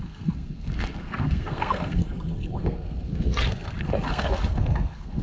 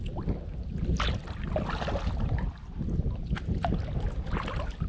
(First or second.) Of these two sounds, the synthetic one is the first